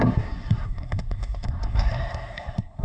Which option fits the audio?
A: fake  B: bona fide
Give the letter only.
A